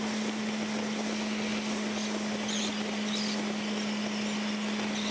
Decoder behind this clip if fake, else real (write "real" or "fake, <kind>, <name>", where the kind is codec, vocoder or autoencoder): real